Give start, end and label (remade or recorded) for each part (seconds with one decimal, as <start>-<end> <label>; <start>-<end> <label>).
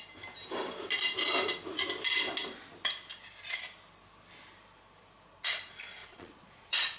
0.0-6.0 recorded; 6.0-7.0 remade